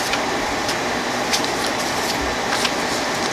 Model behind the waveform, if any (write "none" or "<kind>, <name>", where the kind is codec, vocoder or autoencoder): none